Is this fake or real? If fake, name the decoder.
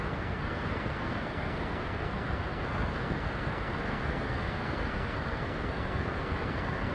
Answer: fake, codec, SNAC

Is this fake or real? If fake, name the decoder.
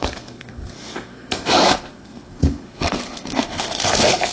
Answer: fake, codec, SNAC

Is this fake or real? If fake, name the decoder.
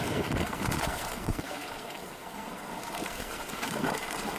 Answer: fake, codec, SNAC